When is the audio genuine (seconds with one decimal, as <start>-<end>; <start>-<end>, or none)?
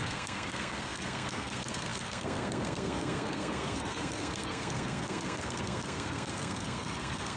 none